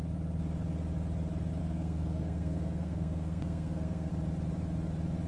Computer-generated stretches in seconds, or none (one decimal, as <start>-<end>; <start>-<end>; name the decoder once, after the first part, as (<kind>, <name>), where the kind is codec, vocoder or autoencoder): 1.6-4.1 (codec, SNAC)